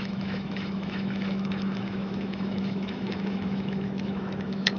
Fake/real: fake